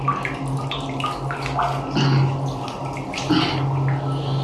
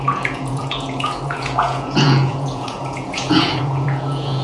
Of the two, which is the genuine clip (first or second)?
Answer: first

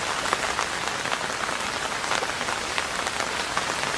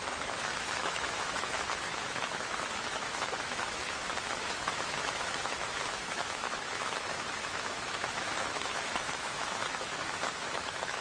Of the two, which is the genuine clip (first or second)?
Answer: first